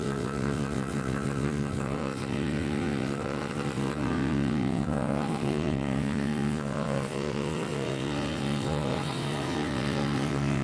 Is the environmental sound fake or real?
fake